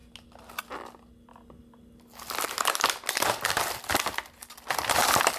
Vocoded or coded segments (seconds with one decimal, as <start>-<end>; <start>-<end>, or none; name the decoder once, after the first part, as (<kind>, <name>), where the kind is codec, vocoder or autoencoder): none